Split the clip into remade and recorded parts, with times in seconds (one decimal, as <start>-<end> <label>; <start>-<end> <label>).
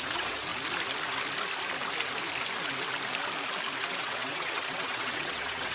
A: 0.0-0.5 remade; 0.5-3.9 recorded; 3.9-5.7 remade